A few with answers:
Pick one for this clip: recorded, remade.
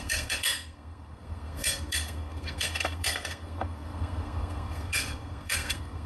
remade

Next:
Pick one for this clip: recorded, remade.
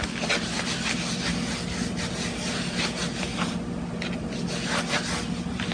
recorded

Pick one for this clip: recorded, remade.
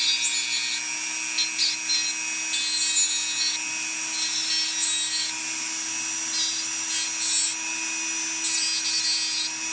recorded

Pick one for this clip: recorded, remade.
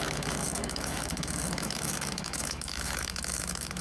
remade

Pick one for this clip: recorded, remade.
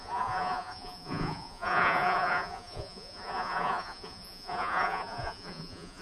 remade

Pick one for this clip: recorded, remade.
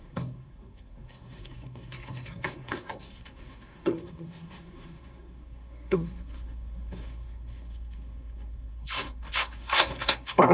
remade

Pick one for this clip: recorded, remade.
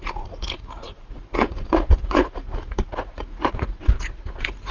remade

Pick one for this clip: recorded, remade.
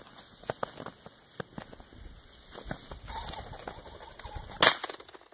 recorded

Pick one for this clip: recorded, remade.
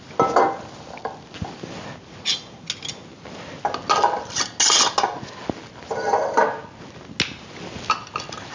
recorded